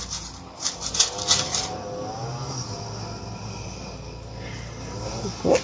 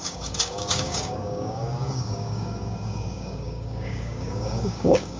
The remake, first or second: second